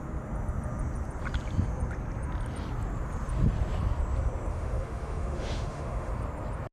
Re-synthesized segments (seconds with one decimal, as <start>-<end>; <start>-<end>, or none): 4.5-6.1